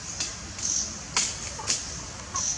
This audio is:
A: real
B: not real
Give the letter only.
A